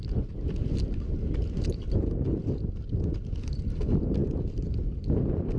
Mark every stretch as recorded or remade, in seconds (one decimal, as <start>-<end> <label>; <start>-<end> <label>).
0.0-5.6 recorded